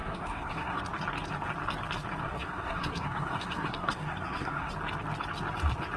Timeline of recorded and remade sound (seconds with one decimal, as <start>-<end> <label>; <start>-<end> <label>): 0.0-0.8 remade; 0.8-2.2 recorded; 2.2-4.7 remade; 4.7-6.0 recorded